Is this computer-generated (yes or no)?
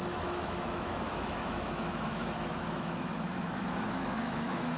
yes